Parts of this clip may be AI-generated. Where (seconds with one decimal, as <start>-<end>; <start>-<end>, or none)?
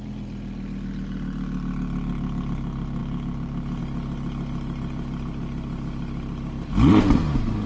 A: none